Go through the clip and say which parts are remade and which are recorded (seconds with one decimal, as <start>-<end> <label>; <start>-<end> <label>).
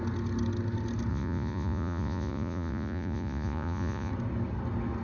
0.0-1.1 recorded; 1.1-4.1 remade; 4.1-5.0 recorded